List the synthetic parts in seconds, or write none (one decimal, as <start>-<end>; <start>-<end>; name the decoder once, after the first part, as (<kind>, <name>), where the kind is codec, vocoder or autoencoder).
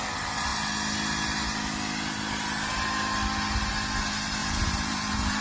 4.4-5.4 (vocoder, Vocos)